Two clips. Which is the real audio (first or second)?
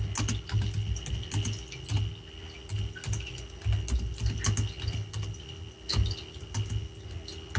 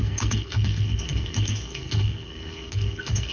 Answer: first